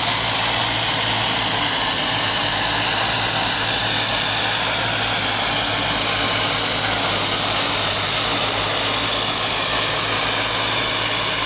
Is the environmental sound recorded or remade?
recorded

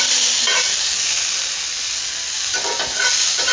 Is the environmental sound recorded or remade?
recorded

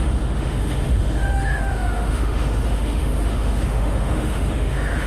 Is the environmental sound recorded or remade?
remade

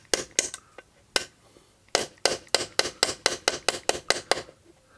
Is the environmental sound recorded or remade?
recorded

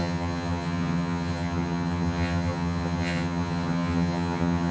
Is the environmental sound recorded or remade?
remade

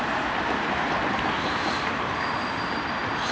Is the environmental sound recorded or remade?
recorded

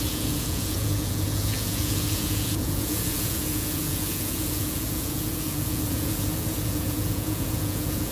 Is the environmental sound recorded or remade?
remade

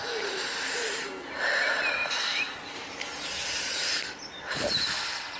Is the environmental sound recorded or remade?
recorded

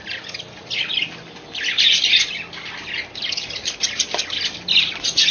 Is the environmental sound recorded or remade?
recorded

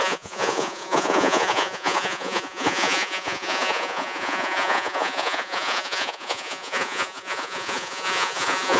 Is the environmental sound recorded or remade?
remade